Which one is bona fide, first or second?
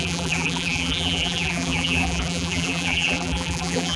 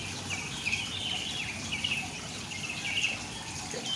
second